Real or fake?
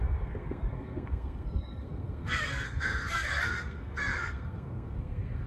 fake